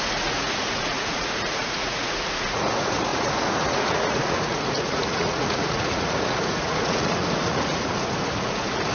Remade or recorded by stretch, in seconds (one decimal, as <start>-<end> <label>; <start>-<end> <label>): 0.0-8.9 remade